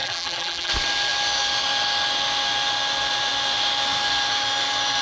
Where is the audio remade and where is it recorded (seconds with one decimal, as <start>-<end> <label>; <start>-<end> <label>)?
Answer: 0.0-0.7 remade; 0.7-5.0 recorded